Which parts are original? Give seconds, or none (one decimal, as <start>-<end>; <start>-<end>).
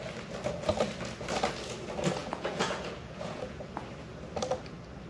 0.0-2.2; 3.7-5.1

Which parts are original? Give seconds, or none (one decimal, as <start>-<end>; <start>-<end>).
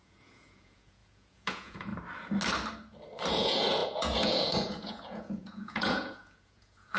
1.9-3.3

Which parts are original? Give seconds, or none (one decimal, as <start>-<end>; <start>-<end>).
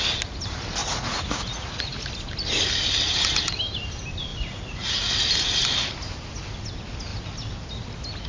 0.0-0.8; 2.1-4.3; 5.1-8.3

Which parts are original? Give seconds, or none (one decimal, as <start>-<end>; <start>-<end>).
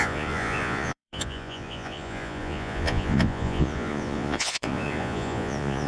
none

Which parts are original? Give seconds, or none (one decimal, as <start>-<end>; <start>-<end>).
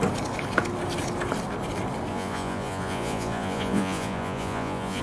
0.0-2.1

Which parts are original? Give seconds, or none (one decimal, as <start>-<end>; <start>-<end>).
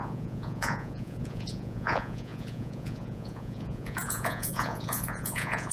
none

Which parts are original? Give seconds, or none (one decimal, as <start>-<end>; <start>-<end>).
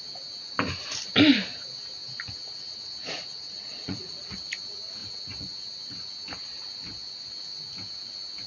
0.0-3.7; 4.4-8.5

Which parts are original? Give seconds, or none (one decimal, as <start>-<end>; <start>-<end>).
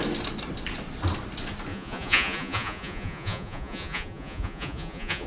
0.0-1.7